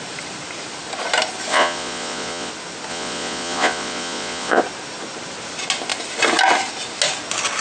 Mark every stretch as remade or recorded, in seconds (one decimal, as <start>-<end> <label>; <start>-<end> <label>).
0.0-1.5 recorded; 1.5-2.5 remade; 2.5-2.9 recorded; 2.9-4.6 remade; 4.6-7.6 recorded